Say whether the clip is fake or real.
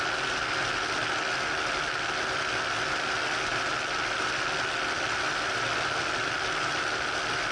real